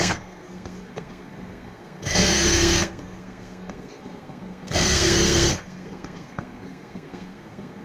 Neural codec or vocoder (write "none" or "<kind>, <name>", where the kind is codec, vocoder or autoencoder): codec, SNAC